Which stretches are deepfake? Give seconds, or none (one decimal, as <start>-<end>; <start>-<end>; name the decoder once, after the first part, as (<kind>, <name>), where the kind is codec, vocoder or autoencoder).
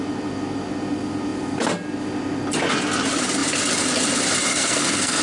4.5-5.2 (codec, SNAC)